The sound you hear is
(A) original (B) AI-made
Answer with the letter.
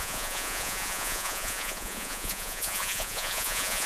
B